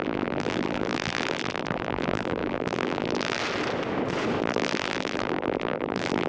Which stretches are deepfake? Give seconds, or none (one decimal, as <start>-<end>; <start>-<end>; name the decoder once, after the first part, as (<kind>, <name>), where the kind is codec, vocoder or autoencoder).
0.0-3.4 (vocoder, BigVGAN v2); 4.4-6.3

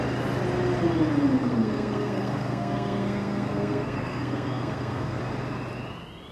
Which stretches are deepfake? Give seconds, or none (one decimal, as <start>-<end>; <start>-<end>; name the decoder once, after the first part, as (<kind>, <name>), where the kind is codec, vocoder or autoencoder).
1.4-5.2 (codec, SNAC)

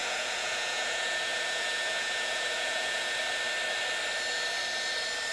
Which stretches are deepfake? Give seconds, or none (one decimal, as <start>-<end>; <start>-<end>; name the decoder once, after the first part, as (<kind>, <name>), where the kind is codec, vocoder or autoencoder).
0.0-3.2 (vocoder, Vocos)

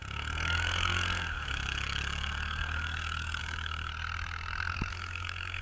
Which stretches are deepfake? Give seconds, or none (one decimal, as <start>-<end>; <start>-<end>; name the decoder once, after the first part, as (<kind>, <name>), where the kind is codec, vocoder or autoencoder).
0.0-3.9 (codec, DAC); 4.9-5.6